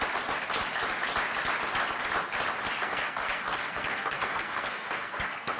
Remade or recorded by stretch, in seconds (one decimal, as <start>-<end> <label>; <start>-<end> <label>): 0.0-2.8 recorded; 2.8-5.6 remade